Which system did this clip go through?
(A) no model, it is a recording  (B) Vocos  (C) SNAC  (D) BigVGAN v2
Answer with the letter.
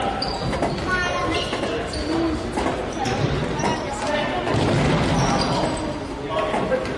A